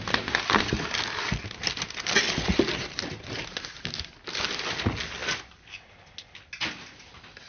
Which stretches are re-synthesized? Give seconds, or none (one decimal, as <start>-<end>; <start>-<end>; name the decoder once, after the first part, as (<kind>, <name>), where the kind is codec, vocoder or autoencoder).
none